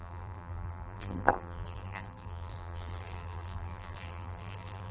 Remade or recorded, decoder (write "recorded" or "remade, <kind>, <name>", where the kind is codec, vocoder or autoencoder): remade, vocoder, BigVGAN v2